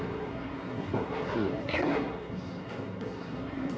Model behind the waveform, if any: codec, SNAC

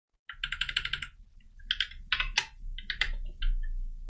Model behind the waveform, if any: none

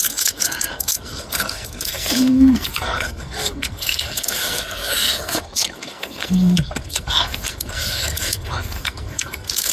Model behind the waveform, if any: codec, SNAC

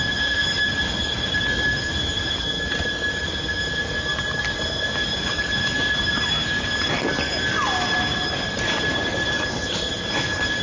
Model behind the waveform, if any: none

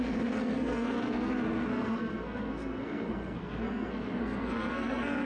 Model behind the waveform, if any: codec, SNAC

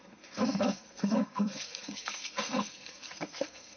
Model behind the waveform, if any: codec, SNAC